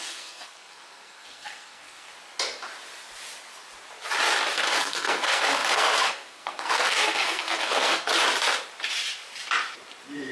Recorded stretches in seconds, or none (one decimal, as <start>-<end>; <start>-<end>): 2.1-4.5; 8.1-10.3